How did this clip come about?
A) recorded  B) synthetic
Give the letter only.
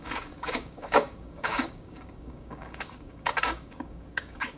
B